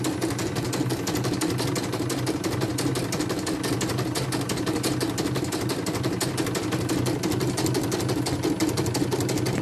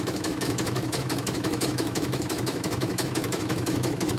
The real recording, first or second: first